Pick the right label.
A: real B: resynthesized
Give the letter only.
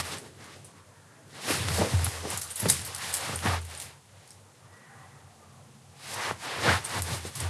A